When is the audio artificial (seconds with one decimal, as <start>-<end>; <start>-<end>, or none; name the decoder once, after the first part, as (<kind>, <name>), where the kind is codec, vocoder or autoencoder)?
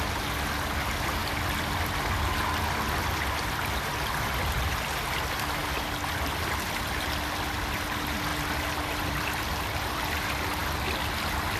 none